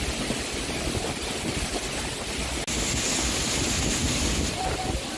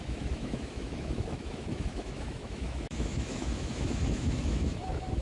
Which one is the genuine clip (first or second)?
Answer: first